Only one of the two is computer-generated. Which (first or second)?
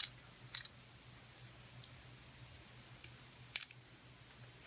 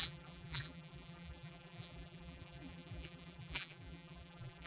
second